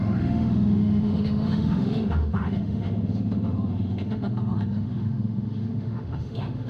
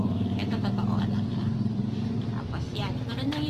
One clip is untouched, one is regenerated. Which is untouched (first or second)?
second